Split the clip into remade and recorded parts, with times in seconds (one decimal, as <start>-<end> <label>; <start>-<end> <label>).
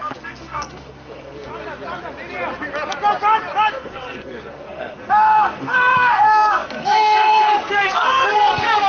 0.0-1.5 remade; 1.5-3.7 recorded; 3.7-8.9 remade